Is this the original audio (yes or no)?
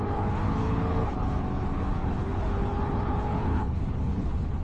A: no